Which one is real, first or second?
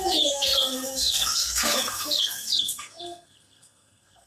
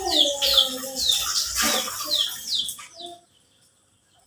second